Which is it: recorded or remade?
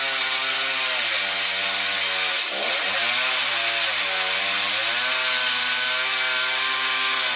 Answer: recorded